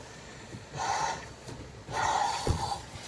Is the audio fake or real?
fake